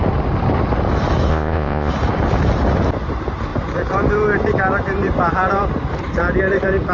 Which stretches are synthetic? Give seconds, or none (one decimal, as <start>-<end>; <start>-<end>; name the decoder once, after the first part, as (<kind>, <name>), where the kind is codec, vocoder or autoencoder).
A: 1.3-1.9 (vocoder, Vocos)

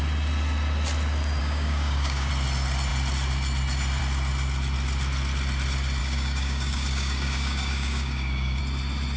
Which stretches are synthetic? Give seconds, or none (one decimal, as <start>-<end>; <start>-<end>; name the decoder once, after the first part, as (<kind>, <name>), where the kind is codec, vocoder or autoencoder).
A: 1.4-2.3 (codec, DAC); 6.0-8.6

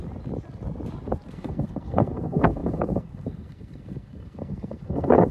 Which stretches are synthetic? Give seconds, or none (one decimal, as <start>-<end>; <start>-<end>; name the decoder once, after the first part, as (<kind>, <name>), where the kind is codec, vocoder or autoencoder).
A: 1.3-5.3 (codec, SNAC)

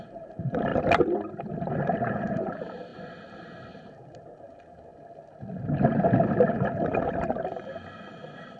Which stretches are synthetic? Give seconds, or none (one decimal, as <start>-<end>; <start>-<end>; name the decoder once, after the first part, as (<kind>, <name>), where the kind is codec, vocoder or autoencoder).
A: 0.0-0.7 (vocoder, BigVGAN v2); 2.1-4.9; 6.5-8.6

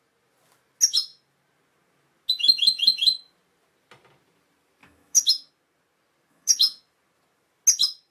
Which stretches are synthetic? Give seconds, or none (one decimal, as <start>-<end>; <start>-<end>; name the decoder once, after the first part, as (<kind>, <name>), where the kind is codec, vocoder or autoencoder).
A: 4.8-5.5 (autoencoder, DAC-VAE); 6.3-6.8